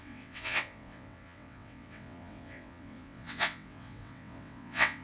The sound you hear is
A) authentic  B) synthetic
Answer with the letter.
B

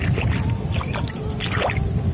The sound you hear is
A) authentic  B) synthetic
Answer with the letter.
A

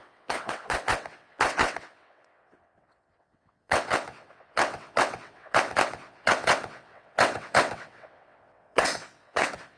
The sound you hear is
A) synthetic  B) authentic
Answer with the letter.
A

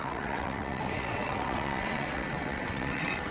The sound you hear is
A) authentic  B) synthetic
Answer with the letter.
B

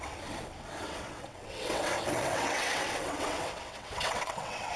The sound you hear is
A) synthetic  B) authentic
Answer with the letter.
A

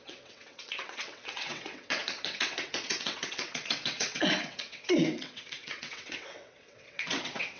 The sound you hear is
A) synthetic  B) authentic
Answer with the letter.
A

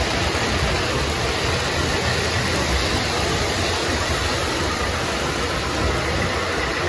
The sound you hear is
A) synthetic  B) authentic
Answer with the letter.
B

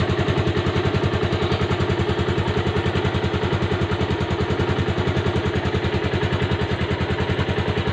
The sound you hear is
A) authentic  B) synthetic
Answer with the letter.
A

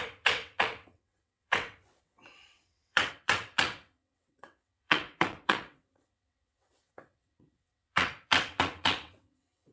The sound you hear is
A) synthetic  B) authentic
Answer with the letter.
A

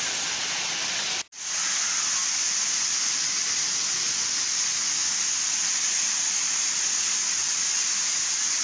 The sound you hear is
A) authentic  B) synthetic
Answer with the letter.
A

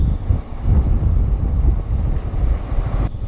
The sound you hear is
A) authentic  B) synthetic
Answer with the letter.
A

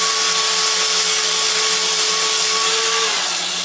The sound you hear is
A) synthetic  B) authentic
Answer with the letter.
B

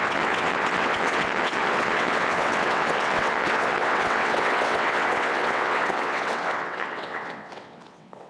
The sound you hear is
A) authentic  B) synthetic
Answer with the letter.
B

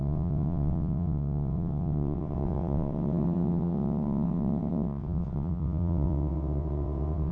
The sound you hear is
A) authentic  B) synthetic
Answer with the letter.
B